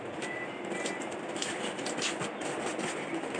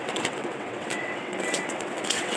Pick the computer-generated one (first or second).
second